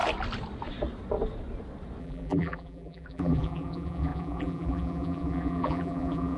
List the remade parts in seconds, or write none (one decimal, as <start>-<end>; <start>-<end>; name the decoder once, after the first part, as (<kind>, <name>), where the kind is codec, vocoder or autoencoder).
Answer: 2.0-6.4 (vocoder, BigVGAN v2)